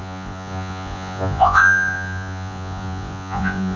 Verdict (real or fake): fake